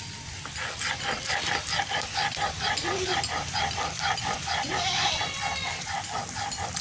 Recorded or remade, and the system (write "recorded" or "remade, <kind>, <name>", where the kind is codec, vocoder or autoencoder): remade, vocoder, BigVGAN v2